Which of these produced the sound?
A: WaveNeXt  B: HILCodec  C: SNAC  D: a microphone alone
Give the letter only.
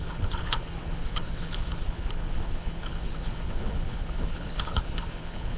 B